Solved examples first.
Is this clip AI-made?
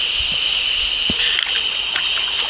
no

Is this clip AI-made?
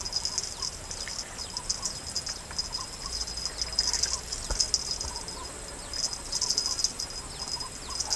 no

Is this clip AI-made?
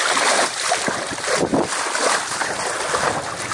no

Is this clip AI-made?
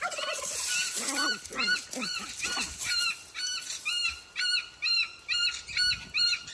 no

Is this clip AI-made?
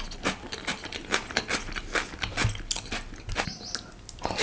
no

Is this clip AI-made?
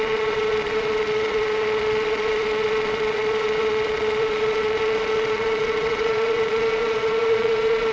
yes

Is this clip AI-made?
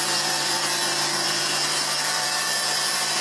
yes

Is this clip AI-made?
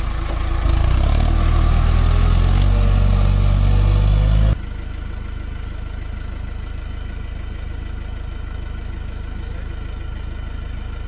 no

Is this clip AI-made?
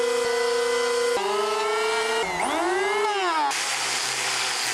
no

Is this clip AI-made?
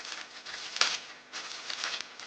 no